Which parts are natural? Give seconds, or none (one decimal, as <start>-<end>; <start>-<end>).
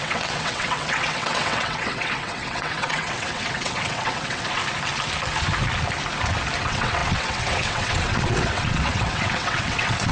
4.6-6.6